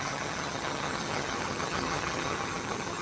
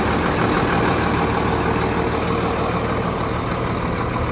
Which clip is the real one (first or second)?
second